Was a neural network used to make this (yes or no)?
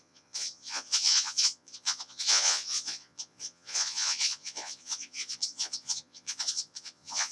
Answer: yes